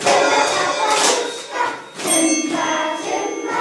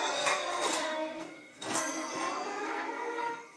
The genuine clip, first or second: first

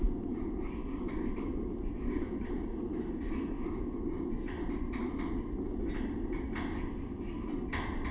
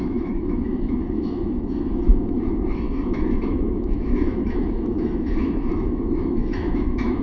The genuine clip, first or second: first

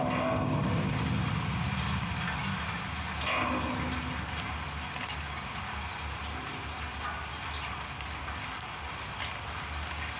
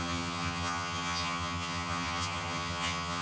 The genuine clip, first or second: first